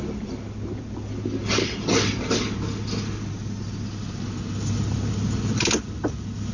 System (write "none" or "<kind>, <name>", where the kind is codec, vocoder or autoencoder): none